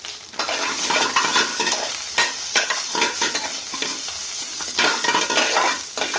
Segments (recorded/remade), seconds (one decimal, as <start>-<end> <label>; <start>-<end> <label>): 0.0-1.5 recorded; 1.5-3.0 remade; 3.0-3.5 recorded; 3.5-5.2 remade; 5.2-6.2 recorded